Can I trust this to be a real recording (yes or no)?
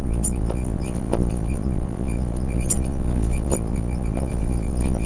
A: no